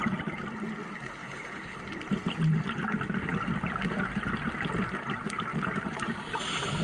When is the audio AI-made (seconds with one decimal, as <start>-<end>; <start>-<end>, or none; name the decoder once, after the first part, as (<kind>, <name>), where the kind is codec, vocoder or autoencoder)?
1.2-1.8 (codec, HILCodec)